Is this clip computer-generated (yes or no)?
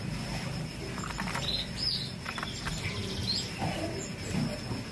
no